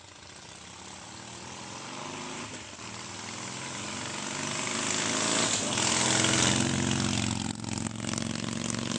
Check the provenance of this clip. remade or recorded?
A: recorded